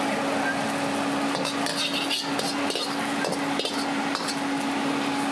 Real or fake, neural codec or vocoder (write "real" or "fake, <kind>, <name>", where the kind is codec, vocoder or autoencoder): real